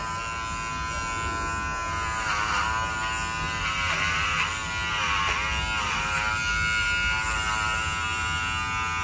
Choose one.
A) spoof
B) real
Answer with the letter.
B